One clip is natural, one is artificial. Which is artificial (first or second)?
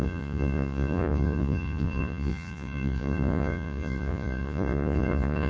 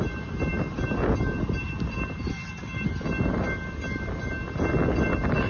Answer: first